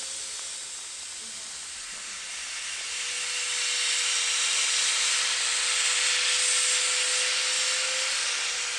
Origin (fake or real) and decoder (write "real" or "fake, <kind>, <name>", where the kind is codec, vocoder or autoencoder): real